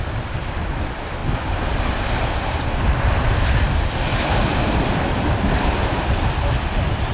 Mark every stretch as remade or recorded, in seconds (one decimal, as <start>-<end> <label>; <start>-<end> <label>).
0.0-7.1 remade